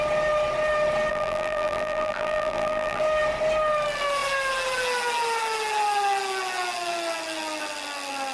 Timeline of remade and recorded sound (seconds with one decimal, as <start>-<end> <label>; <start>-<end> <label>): 0.0-1.1 recorded; 1.1-3.0 remade; 3.0-8.3 recorded